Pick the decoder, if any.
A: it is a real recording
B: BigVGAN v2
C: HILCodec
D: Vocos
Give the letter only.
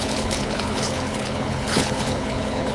C